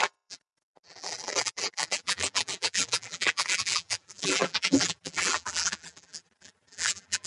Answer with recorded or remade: remade